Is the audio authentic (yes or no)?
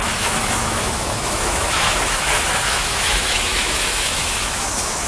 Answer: no